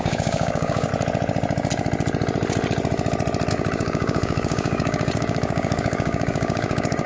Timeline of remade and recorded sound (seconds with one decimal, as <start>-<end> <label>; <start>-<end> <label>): 0.0-0.9 remade; 0.9-3.5 recorded; 3.5-7.1 remade